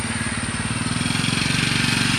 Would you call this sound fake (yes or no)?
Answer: no